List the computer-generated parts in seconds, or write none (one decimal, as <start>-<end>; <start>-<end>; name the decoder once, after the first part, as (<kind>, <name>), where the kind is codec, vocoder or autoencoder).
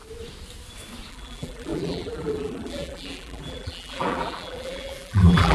1.1-5.5 (vocoder, BigVGAN v2)